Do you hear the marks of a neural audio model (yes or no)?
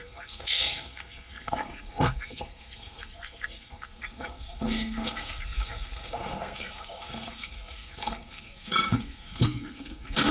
yes